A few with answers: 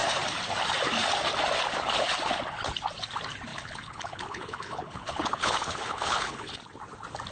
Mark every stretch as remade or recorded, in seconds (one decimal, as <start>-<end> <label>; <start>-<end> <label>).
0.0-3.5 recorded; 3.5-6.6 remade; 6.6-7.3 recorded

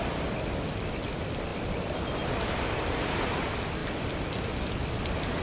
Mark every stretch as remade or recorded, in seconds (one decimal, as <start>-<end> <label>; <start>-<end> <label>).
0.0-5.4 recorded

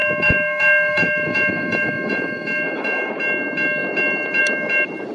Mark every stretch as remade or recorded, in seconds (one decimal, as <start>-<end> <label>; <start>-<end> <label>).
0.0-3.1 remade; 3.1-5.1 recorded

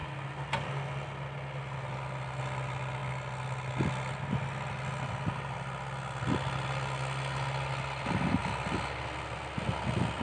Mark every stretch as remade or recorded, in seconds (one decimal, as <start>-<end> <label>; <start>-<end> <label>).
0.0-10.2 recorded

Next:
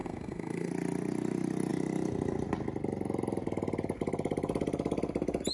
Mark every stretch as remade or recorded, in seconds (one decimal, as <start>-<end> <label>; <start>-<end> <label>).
0.0-0.7 remade; 0.7-5.5 recorded